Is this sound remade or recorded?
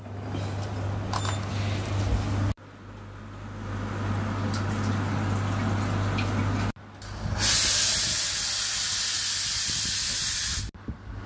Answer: recorded